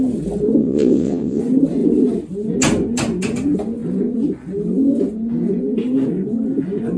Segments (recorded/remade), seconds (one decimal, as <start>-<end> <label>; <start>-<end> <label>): 0.0-0.6 recorded; 0.6-1.4 remade; 1.4-7.0 recorded